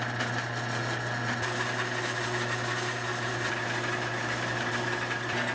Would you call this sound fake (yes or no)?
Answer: no